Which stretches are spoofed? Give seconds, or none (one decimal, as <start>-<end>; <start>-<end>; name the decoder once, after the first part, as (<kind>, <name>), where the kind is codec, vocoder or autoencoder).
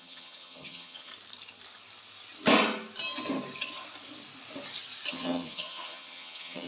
0.0-1.1 (vocoder, HiFi-GAN); 5.1-6.7